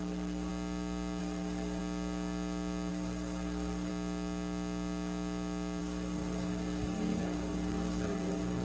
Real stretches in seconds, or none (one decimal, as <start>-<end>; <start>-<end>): 0.5-1.2; 1.8-2.9; 3.9-5.8